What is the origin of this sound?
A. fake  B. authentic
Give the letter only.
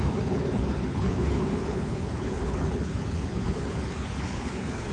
A